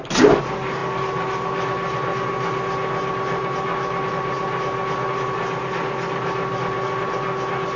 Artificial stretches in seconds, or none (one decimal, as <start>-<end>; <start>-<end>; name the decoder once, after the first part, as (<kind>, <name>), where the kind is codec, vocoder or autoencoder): none